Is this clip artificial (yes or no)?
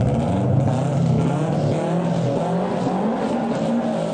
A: no